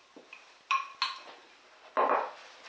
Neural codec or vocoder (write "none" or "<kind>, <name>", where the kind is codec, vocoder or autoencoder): none